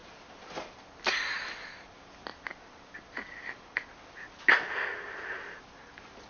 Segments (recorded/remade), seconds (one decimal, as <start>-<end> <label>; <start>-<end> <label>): 0.0-6.3 recorded